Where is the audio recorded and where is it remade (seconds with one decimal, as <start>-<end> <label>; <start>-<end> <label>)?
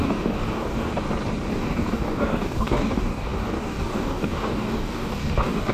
0.0-0.9 remade; 0.9-1.5 recorded; 1.5-5.7 remade